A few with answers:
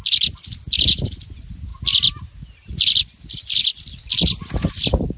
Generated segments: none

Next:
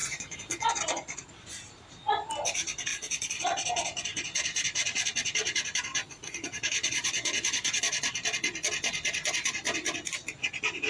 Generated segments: 0.0-0.7 (vocoder, Vocos); 2.9-3.4; 5.9-7.8

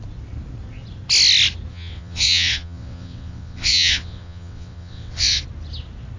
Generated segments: 1.7-5.4 (vocoder, WaveNeXt)

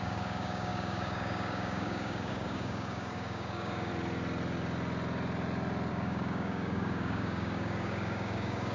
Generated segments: 0.0-3.9 (codec, DAC); 5.9-8.7

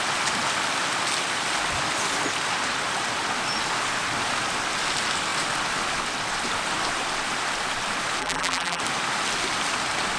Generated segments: 8.2-8.8 (vocoder, BigVGAN v2)

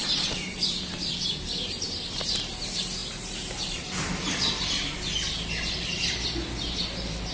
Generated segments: 0.0-2.4 (vocoder, BigVGAN v2)

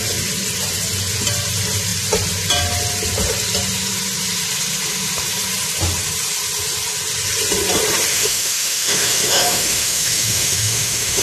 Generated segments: 8.1-11.2 (autoencoder, DAC-VAE)

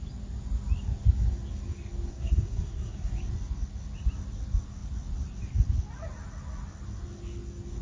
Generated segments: 2.1-3.1 (codec, SNAC)